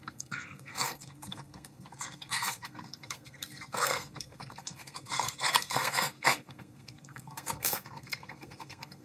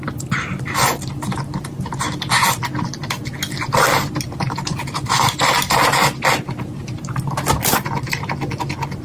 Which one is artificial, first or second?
first